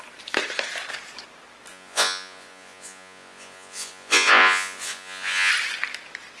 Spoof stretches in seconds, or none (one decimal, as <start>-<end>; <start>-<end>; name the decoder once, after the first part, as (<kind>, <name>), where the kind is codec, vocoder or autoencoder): 1.7-5.5 (vocoder, Vocos)